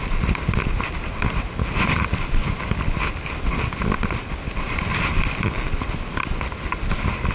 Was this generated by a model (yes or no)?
no